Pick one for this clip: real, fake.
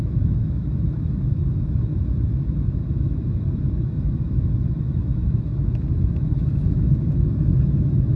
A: fake